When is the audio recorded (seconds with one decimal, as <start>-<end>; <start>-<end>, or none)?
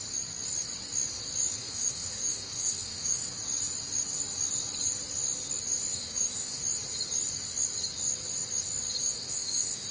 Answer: 0.0-1.6; 3.2-5.9; 6.6-9.0